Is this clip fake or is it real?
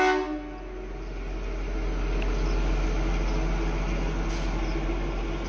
real